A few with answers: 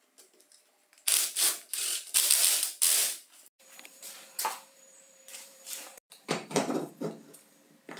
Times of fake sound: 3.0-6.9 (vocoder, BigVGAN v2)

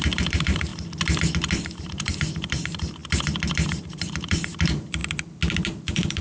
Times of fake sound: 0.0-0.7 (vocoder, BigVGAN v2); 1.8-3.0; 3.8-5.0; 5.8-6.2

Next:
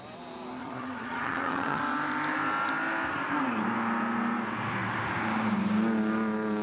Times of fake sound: 0.6-1.8 (vocoder, HiFi-GAN)

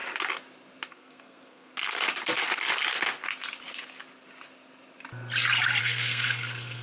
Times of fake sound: 0.9-1.7 (codec, SNAC); 5.8-6.8

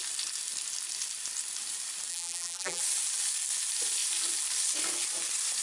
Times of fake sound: 2.1-2.8 (vocoder, BigVGAN v2)

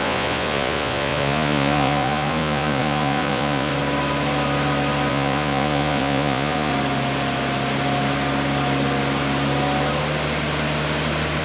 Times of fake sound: 0.0-3.7 (vocoder, Vocos); 5.1-6.7

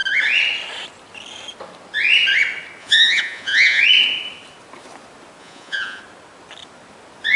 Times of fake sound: 2.8-3.8 (vocoder, Vocos); 5.4-6.0

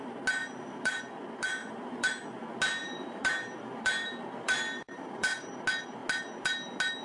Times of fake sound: 0.4-1.0 (vocoder, BigVGAN v2); 1.6-2.1; 2.8-5.5